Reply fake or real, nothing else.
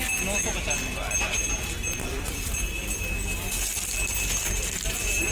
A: real